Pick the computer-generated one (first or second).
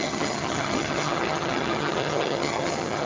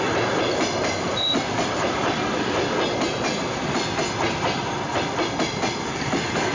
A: first